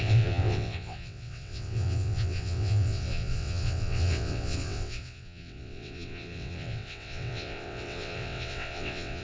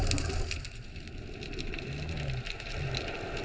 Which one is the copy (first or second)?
first